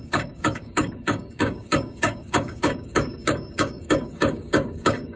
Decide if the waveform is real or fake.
fake